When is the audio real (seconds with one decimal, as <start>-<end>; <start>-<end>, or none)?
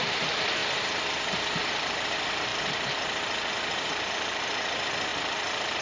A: 0.6-1.3; 2.5-3.5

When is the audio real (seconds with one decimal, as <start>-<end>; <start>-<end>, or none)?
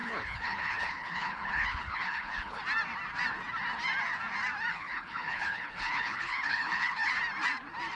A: 2.6-4.7; 7.1-8.0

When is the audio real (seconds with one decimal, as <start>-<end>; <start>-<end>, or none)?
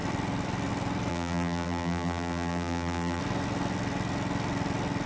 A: 0.0-1.1; 3.2-5.1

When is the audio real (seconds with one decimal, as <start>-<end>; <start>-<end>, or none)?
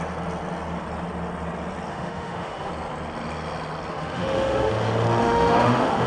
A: 0.0-1.9; 2.7-3.9; 4.7-5.2